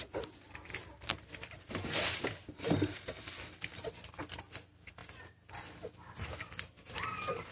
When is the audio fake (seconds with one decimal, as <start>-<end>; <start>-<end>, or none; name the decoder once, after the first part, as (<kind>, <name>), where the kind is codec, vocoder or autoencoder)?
none